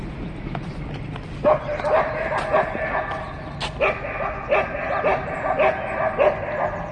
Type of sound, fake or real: real